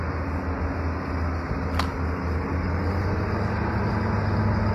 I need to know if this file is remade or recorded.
recorded